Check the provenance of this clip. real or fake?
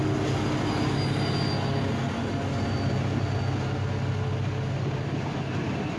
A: real